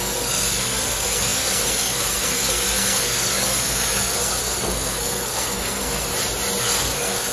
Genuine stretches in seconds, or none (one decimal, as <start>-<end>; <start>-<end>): 6.1-6.6